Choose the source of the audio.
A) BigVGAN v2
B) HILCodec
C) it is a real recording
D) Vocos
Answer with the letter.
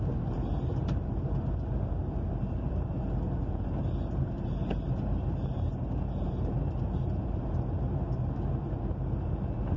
A